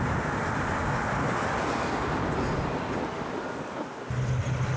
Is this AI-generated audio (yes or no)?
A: no